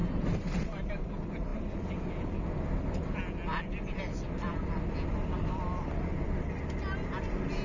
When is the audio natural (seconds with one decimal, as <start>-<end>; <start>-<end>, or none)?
1.1-7.6